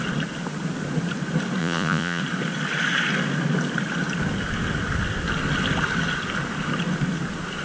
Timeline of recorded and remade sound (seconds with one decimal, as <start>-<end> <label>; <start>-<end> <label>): 0.0-1.6 recorded; 1.6-2.2 remade; 2.2-7.6 recorded